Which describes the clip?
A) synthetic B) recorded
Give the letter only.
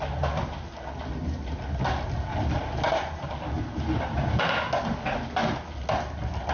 B